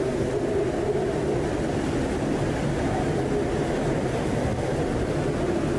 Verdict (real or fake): real